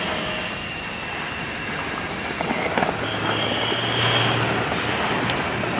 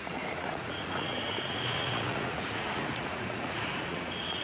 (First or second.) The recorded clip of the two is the first